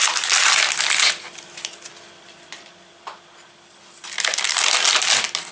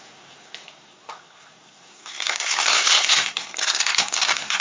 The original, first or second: first